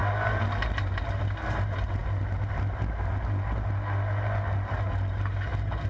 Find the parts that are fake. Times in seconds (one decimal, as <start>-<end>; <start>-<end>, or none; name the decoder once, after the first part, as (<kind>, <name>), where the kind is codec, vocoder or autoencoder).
none